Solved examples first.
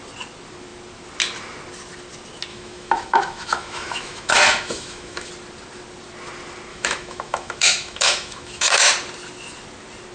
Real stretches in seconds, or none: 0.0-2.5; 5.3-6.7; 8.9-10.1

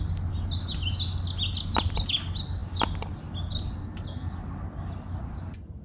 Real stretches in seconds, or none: 0.0-5.8

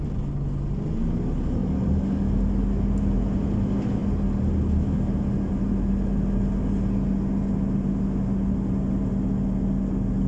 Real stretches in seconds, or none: 0.0-10.3

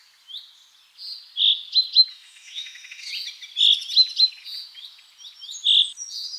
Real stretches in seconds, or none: 0.0-2.1; 3.1-6.4

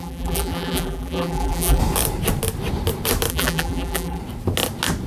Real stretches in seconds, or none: 1.8-3.3; 4.2-5.1

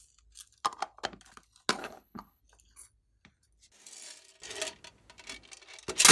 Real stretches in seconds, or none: 0.0-1.8; 2.4-6.1